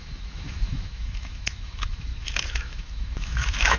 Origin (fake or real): fake